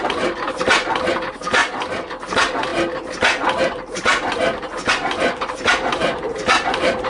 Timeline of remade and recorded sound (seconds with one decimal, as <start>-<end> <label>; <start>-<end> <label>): 0.0-1.6 remade; 1.6-2.3 recorded; 2.3-2.7 remade; 2.7-4.9 recorded; 4.9-7.1 remade